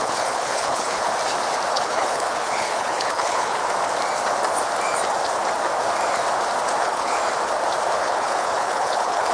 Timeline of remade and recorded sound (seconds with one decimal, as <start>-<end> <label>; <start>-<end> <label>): 0.0-1.1 remade; 1.1-1.7 recorded; 1.7-3.6 remade; 3.6-6.8 recorded; 6.8-7.2 remade; 7.2-8.0 recorded; 8.0-9.3 remade

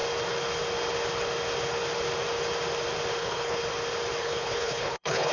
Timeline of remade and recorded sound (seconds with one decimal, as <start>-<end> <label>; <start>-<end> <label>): 0.0-3.2 recorded; 3.2-3.6 remade; 3.6-4.2 recorded; 4.2-5.3 remade

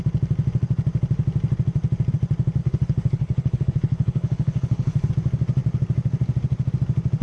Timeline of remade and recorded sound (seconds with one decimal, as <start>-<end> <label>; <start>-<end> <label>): 0.0-2.6 recorded; 2.6-5.1 remade; 5.1-7.2 recorded

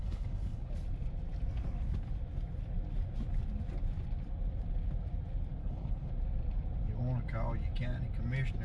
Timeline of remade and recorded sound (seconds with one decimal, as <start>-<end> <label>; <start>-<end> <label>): 0.0-0.7 remade; 0.7-5.6 recorded; 5.6-6.1 remade; 6.1-8.6 recorded

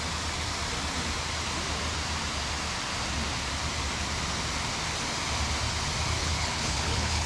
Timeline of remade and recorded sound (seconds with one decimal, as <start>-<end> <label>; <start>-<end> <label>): 0.0-6.2 recorded; 6.2-7.3 remade

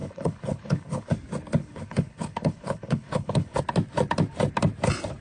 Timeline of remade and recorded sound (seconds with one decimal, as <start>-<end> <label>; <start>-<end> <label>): 0.0-1.1 remade; 1.1-1.6 recorded; 1.6-3.6 remade; 3.6-5.2 recorded

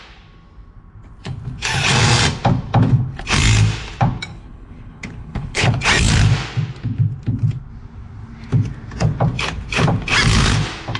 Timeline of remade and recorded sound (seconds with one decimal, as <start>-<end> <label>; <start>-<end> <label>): 0.0-4.3 recorded; 4.3-5.7 remade; 5.7-11.0 recorded